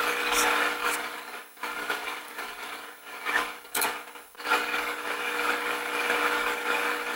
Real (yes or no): no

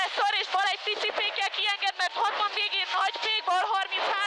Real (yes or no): yes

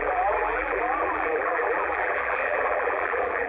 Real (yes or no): no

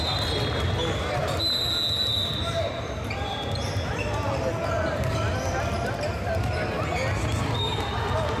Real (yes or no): yes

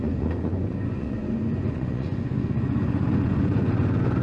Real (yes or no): no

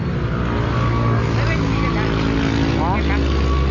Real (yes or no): yes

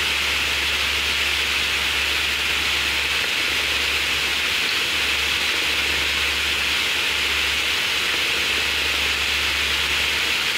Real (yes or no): yes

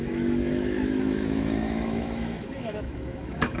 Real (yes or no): no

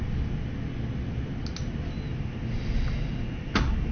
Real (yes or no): yes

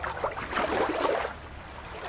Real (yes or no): no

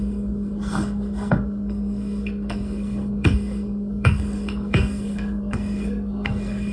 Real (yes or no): no